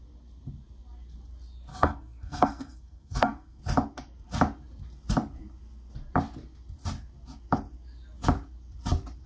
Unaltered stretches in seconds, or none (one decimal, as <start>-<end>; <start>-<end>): 0.0-1.7; 3.6-9.3